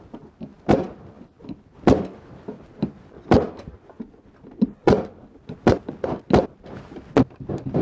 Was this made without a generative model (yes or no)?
yes